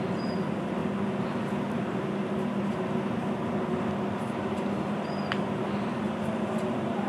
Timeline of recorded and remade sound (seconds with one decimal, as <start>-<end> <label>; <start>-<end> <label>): 0.0-7.1 recorded

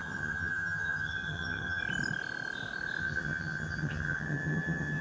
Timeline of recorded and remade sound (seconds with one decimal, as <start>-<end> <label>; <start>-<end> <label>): 0.0-1.8 remade; 1.8-3.0 recorded; 3.0-5.0 remade

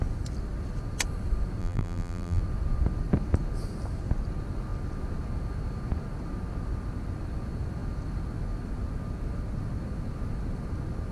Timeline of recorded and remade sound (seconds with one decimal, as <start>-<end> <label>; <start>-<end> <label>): 0.0-1.6 recorded; 1.6-2.4 remade; 2.4-11.1 recorded

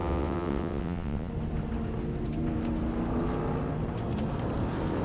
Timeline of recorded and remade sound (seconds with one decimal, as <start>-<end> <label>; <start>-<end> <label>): 0.0-1.3 remade; 1.3-5.0 recorded

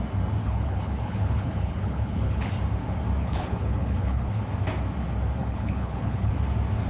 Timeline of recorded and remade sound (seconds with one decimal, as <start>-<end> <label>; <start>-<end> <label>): 0.0-0.4 recorded; 0.4-2.5 remade; 2.5-3.2 recorded; 3.2-4.4 remade; 4.4-5.4 recorded; 5.4-6.3 remade; 6.3-6.9 recorded